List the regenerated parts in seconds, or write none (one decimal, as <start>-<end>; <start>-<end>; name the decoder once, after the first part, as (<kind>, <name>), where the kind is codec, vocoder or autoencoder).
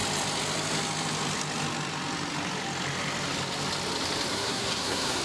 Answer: 4.3-5.2 (codec, SNAC)